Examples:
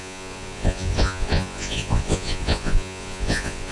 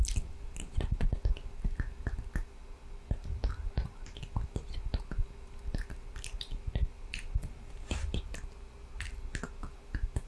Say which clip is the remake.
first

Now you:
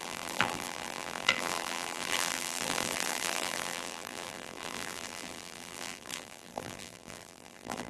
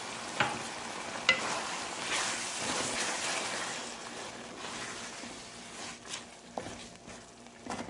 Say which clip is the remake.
first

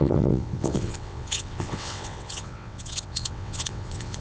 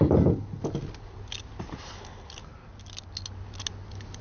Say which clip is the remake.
first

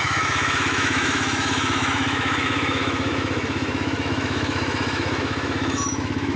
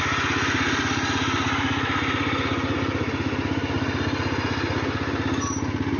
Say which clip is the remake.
first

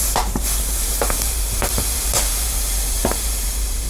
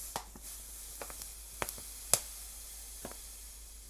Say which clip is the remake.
first